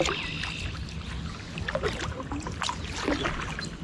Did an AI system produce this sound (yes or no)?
no